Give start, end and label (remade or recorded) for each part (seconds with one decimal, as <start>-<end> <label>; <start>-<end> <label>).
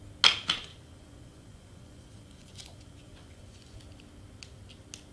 0.0-0.7 recorded; 0.7-3.8 remade; 3.8-5.1 recorded